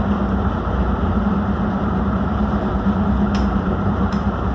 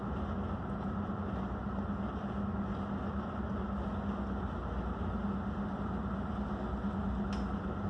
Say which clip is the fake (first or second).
first